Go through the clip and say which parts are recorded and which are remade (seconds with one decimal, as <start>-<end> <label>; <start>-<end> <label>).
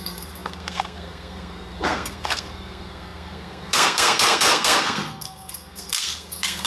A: 0.0-6.7 remade